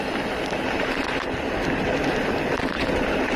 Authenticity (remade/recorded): recorded